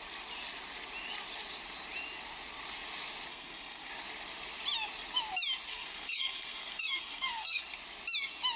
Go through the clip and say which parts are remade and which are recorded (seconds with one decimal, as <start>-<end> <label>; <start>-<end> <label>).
0.0-3.3 recorded; 3.3-3.9 remade; 3.9-5.7 recorded; 5.7-7.6 remade; 7.6-8.6 recorded